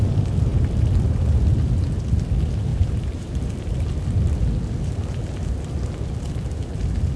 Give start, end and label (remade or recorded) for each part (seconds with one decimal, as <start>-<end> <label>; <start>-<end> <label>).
0.0-2.7 recorded; 2.7-3.4 remade; 3.4-7.2 recorded

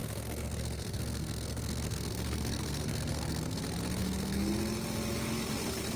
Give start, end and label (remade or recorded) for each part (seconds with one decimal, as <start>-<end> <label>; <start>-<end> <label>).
0.0-3.6 remade; 3.6-4.0 recorded; 4.0-4.5 remade; 4.5-6.0 recorded

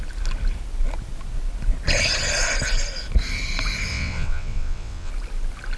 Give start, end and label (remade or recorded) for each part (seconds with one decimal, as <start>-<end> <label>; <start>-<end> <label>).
0.0-3.9 recorded; 3.9-5.1 remade; 5.1-5.8 recorded

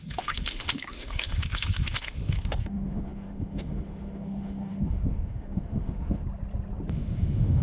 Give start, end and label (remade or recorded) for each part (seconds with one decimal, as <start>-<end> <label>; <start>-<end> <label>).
0.0-6.2 remade; 6.2-6.9 recorded; 6.9-7.6 remade